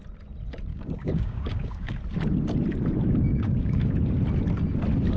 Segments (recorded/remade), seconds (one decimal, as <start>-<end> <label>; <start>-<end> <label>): 0.0-0.7 recorded; 0.7-2.0 remade; 2.0-3.3 recorded; 3.3-3.9 remade; 3.9-5.2 recorded